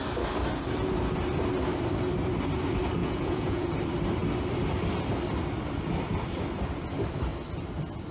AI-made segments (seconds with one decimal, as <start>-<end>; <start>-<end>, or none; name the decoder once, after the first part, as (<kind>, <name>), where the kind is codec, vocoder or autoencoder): 3.0-3.7 (vocoder, Vocos)